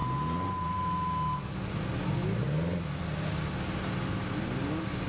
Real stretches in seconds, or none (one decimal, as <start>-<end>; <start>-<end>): 0.0-5.1